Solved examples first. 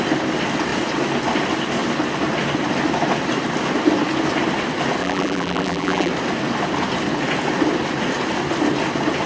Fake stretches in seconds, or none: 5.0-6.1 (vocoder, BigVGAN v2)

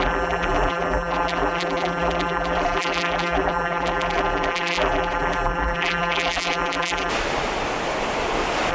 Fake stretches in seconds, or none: 0.0-7.1 (vocoder, BigVGAN v2)

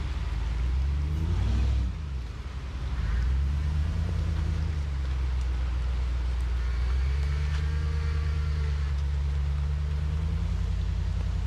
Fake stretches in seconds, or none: 3.8-4.7 (vocoder, BigVGAN v2)

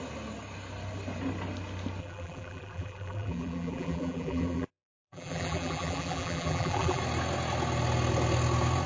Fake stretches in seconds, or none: 2.0-7.0 (vocoder, BigVGAN v2)